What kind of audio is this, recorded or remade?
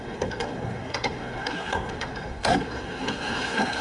remade